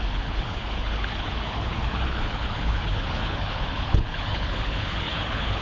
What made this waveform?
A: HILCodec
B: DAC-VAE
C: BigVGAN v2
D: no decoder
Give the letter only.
A